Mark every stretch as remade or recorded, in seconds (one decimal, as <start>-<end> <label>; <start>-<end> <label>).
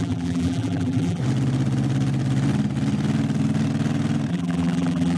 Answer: 0.0-1.2 remade; 1.2-4.3 recorded; 4.3-5.2 remade